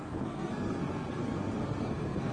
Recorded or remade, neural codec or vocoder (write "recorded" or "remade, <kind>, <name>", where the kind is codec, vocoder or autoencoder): remade, codec, SNAC